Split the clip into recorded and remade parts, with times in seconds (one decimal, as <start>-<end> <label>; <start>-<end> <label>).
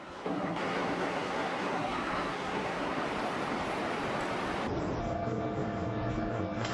0.0-3.0 remade; 3.0-5.0 recorded; 5.0-6.7 remade